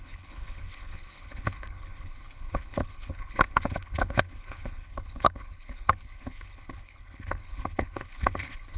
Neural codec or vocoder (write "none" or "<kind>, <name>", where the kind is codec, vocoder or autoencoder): codec, HILCodec